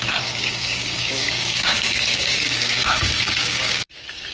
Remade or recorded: remade